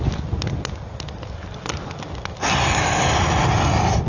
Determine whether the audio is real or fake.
real